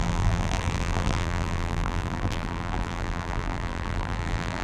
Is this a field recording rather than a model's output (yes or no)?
no